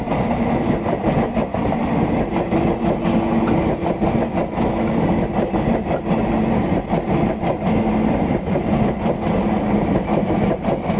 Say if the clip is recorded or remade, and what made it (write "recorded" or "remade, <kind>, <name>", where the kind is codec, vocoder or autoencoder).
recorded